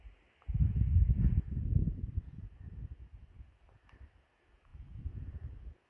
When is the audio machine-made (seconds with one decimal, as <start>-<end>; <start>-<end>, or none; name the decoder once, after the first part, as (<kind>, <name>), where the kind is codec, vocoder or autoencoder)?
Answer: none